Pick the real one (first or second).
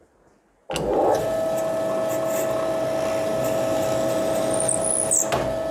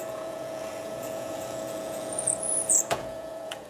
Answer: first